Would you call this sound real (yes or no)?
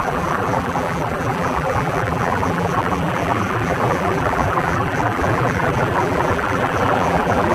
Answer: no